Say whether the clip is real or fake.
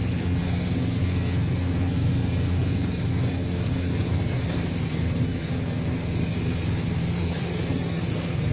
fake